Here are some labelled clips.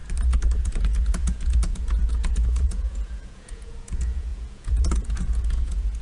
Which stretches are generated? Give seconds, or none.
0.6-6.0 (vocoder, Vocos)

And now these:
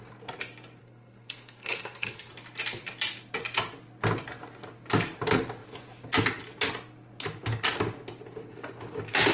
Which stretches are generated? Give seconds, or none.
0.8-2.3 (codec, SNAC)

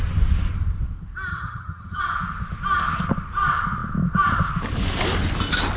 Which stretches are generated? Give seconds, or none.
1.3-2.0 (vocoder, HiFi-GAN)

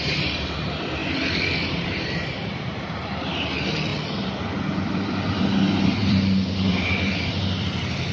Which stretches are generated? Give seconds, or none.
0.0-8.1 (vocoder, BigVGAN v2)

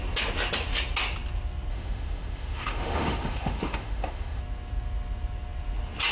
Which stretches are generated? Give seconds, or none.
1.7-4.4 (autoencoder, DAC-VAE)